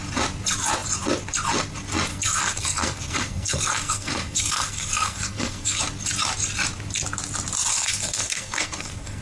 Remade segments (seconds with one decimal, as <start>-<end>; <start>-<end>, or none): 2.1-5.8; 7.7-9.2